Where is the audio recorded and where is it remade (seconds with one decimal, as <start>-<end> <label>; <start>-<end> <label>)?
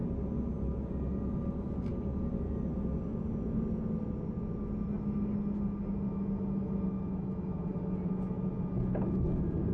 0.0-9.7 recorded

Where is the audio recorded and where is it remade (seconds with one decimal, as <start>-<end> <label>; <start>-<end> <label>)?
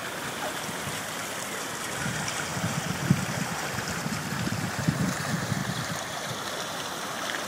0.0-2.5 recorded; 2.5-5.1 remade; 5.1-5.6 recorded; 5.6-6.4 remade; 6.4-7.5 recorded